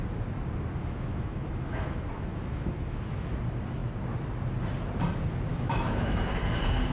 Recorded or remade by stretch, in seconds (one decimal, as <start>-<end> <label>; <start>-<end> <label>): 0.0-0.8 recorded; 0.8-3.3 remade; 3.3-5.5 recorded; 5.5-6.3 remade; 6.3-6.9 recorded